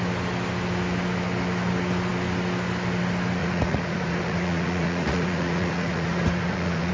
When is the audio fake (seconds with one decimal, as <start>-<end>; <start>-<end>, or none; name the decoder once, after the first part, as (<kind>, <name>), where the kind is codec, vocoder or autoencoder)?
3.4-6.9 (vocoder, Vocos)